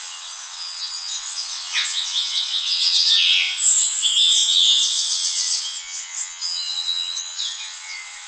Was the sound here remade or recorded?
remade